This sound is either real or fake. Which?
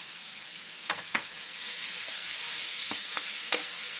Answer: fake